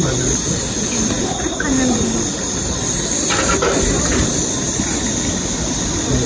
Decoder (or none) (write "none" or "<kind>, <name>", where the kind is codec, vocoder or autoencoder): none